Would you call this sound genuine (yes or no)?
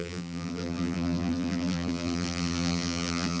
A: no